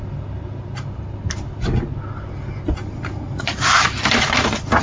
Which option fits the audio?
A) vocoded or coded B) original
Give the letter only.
B